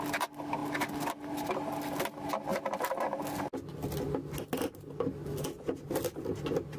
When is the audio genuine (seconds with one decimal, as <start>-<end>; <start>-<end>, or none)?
0.0-6.8